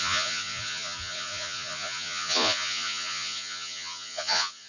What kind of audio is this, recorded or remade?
remade